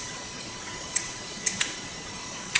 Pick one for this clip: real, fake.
fake